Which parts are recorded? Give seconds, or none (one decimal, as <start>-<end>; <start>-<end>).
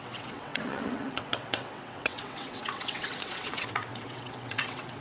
none